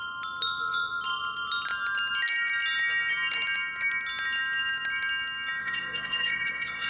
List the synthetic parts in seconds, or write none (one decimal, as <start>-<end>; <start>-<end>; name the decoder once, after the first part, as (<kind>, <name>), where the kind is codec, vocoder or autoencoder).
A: 5.6-6.9 (vocoder, Vocos)